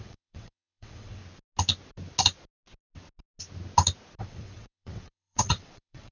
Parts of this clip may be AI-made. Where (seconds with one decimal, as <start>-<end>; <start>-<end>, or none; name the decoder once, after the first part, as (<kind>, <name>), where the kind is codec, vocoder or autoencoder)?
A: 0.0-1.2 (vocoder, WaveNeXt); 4.2-6.1